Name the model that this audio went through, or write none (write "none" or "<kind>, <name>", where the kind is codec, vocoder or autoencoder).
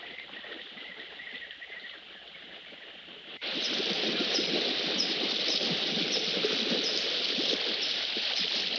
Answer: none